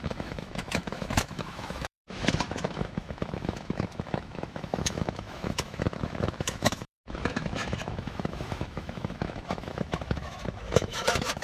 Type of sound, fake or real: fake